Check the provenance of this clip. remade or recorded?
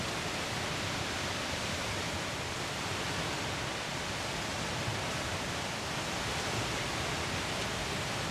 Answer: recorded